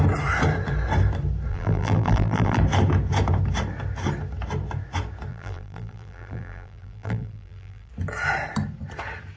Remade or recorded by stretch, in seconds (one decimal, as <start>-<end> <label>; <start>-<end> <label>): 0.0-1.5 recorded; 1.5-2.6 remade; 2.6-5.3 recorded; 5.3-7.9 remade; 7.9-9.4 recorded